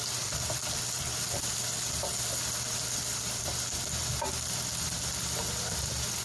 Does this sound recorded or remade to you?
recorded